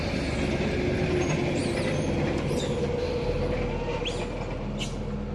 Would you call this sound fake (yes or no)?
no